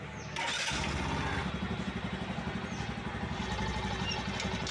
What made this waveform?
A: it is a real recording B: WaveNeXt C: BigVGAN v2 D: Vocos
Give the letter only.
A